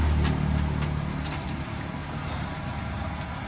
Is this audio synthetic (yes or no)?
no